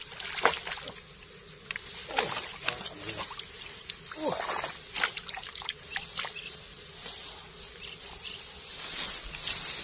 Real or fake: real